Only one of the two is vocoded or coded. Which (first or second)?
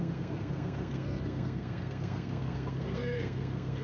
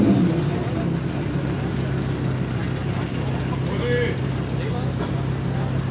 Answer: first